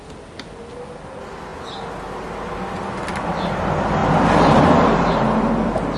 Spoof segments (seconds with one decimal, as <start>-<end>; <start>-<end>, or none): none